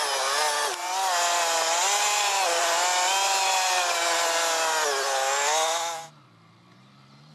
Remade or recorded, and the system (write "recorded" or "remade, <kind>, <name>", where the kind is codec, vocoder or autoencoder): recorded